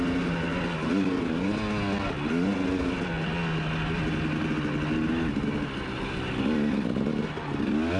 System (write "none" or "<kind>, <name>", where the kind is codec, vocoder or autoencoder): none